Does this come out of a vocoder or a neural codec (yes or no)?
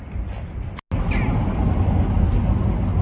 no